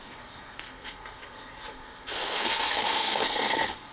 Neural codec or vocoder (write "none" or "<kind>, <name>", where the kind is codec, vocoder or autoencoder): codec, SNAC